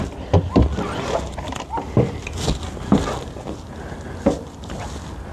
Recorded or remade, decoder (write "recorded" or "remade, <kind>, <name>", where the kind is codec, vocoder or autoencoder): recorded